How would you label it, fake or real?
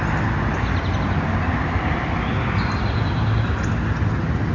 real